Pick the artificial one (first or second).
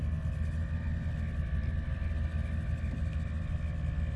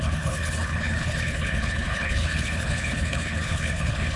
second